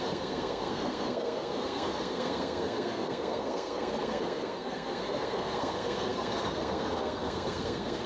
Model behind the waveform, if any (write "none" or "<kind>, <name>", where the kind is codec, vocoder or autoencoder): codec, SNAC